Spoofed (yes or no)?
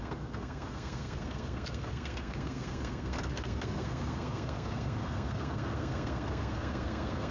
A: yes